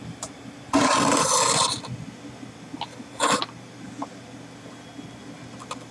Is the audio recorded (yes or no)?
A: yes